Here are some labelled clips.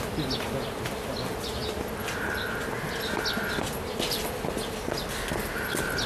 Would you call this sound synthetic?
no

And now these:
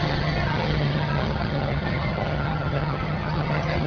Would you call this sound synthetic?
yes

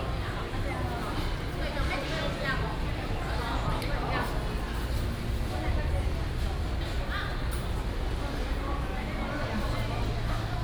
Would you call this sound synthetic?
no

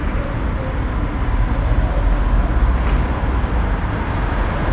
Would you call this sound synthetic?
no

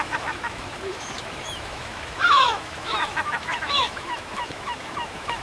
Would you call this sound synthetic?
yes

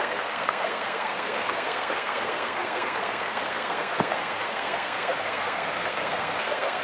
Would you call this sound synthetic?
yes